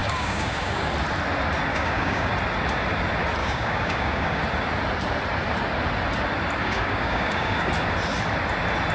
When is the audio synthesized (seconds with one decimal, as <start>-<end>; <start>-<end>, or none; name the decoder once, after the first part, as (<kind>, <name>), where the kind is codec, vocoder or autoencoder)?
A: 0.0-0.9 (codec, DAC); 1.7-2.3; 3.4-4.4; 6.6-7.7